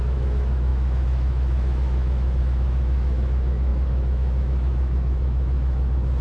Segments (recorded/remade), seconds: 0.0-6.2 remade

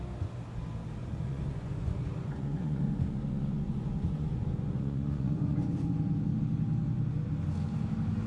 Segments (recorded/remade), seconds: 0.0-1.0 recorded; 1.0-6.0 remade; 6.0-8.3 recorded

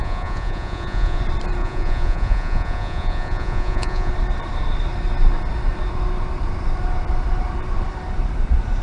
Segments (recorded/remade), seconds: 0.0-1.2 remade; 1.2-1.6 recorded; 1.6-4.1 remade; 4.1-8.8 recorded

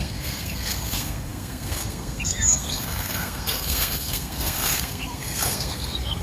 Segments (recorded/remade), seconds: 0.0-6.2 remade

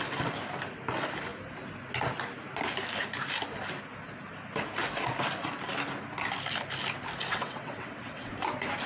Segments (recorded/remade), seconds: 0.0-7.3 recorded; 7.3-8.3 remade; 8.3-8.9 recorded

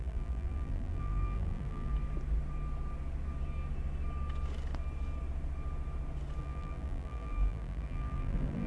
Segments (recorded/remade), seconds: 0.0-1.9 remade; 1.9-6.4 recorded; 6.4-8.7 remade